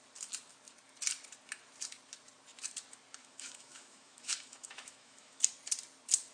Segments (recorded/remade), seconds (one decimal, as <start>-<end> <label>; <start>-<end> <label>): 0.0-3.2 recorded; 3.2-5.4 remade; 5.4-6.3 recorded